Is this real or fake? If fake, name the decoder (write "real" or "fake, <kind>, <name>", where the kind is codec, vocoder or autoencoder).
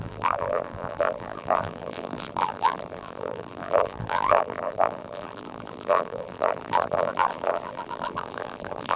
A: fake, vocoder, BigVGAN v2